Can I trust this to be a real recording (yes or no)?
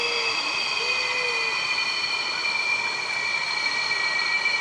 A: yes